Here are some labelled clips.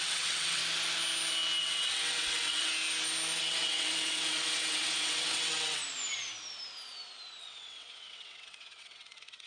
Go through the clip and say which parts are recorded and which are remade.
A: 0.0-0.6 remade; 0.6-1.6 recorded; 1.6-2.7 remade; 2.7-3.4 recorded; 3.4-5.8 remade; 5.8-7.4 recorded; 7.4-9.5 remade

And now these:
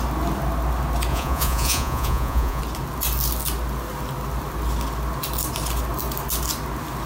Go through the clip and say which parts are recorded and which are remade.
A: 0.0-1.1 recorded; 1.1-2.6 remade; 2.6-7.1 recorded

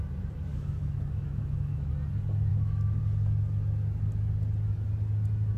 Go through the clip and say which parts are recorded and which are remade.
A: 0.0-0.5 recorded; 0.5-1.9 remade; 1.9-2.5 recorded; 2.5-3.0 remade; 3.0-5.6 recorded

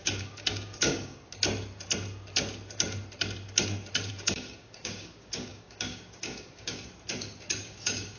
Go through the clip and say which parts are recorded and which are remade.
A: 0.0-1.1 remade; 1.1-4.1 recorded; 4.1-6.9 remade; 6.9-7.6 recorded; 7.6-8.2 remade

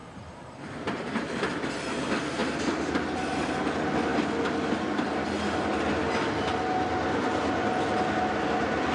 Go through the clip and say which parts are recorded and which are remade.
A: 0.0-1.7 remade; 1.7-8.9 recorded

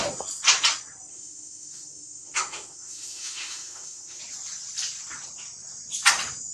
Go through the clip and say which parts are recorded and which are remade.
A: 0.0-1.1 recorded; 1.1-4.2 remade; 4.2-6.5 recorded